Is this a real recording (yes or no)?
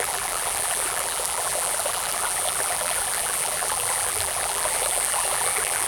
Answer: no